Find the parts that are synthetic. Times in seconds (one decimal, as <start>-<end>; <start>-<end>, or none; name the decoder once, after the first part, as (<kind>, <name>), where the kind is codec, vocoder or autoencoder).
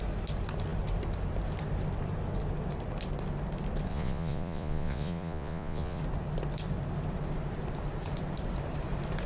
3.9-6.0 (vocoder, Vocos)